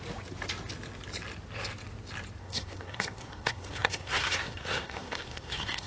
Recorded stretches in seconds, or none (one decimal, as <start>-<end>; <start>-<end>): 0.0-2.4